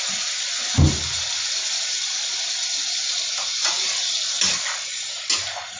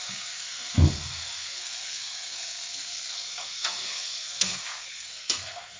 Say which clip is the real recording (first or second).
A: first